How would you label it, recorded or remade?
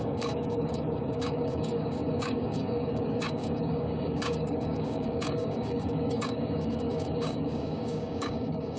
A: remade